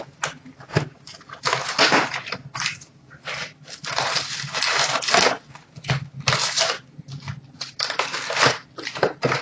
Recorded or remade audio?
recorded